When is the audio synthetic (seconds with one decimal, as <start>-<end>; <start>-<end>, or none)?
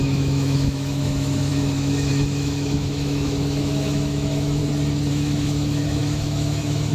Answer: 0.0-4.6; 5.1-6.9